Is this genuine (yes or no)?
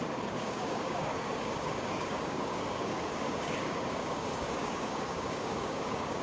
no